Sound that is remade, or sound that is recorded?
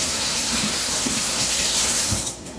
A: remade